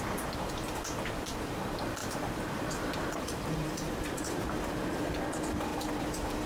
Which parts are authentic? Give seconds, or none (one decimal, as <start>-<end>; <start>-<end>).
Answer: 0.0-2.0; 4.6-5.7